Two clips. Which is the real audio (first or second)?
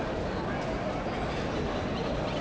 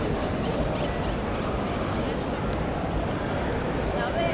first